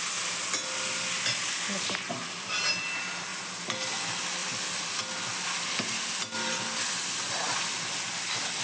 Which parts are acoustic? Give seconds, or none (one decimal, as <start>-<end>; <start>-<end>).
0.0-8.6